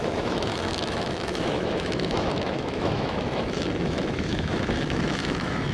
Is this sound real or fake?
fake